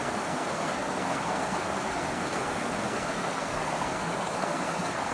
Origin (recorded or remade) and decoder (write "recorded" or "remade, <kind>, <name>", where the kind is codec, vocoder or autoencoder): remade, codec, SNAC